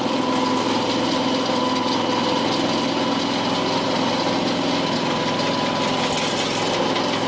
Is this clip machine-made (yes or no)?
no